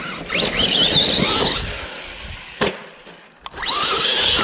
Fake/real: real